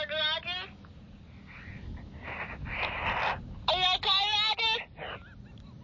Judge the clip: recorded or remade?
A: recorded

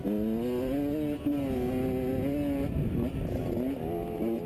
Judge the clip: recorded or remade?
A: recorded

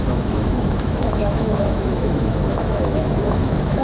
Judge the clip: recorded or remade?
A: remade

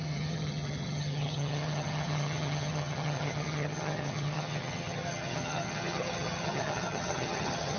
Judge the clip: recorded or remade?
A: remade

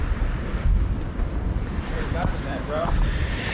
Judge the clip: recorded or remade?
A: remade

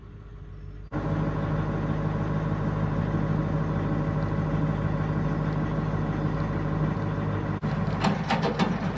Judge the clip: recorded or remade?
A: recorded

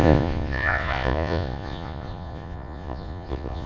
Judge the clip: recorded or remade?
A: remade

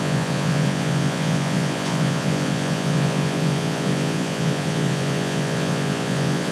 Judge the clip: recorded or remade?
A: remade